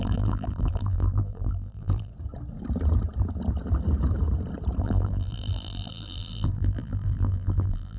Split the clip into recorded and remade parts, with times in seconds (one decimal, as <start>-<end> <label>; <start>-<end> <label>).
0.0-2.1 remade; 2.1-4.8 recorded; 4.8-8.0 remade